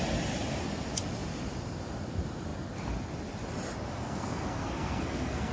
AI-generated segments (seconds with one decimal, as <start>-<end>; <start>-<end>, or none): 4.0-5.5